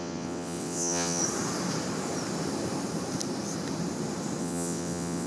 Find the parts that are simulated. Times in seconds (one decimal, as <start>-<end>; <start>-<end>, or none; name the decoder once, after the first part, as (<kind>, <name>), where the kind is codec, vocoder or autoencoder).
0.0-1.2 (vocoder, WaveNeXt); 4.4-5.3